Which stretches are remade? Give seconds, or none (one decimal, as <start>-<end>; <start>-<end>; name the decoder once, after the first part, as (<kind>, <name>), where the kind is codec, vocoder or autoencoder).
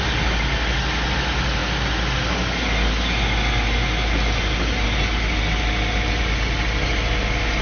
none